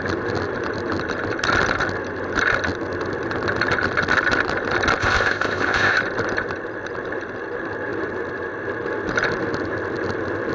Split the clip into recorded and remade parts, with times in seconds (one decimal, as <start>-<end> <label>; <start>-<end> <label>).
0.0-5.0 recorded; 5.0-6.0 remade; 6.0-10.5 recorded